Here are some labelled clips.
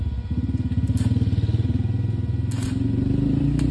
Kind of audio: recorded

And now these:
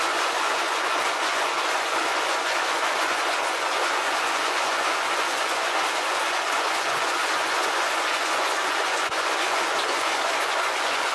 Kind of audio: remade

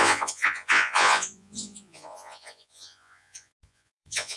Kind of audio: remade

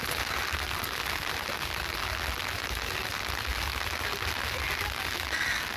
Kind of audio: recorded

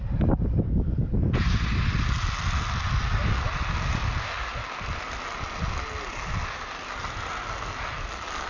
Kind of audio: recorded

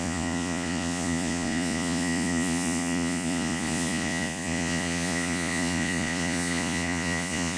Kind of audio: remade